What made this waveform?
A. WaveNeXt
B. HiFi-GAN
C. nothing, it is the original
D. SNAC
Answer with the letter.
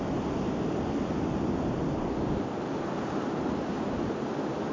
C